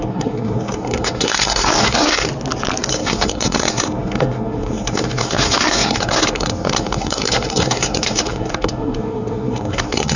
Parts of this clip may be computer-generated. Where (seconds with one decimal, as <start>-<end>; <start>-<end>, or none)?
0.0-2.3; 2.9-10.2